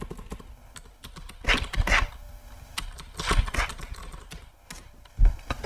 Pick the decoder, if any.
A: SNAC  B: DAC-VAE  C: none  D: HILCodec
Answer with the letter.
C